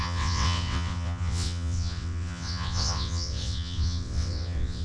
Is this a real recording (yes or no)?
no